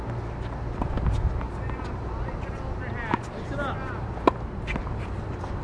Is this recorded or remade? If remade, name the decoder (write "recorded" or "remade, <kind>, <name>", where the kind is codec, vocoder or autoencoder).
recorded